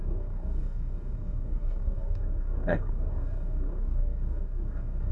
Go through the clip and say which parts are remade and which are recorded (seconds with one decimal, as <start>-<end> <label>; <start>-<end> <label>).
0.0-5.1 remade